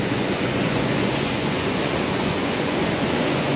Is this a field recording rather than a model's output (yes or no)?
no